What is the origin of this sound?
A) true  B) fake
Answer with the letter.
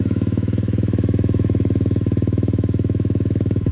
B